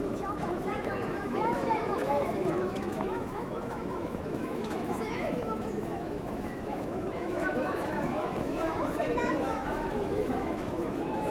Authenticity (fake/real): fake